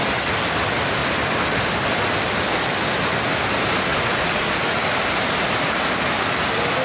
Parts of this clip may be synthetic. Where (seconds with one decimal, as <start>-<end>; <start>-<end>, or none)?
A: 3.9-4.8